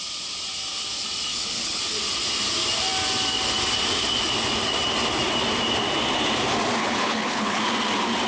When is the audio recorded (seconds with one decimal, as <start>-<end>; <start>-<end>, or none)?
0.0-1.3; 1.8-6.8; 7.6-8.3